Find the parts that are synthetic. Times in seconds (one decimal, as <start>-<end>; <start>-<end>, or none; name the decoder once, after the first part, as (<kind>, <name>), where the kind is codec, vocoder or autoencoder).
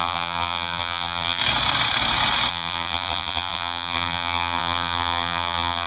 0.0-1.4 (vocoder, BigVGAN v2); 2.5-5.9